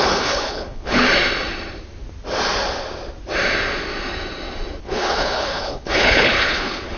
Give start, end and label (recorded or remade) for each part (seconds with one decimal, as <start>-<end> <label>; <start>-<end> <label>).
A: 0.0-1.0 remade; 1.0-4.8 recorded; 4.8-7.0 remade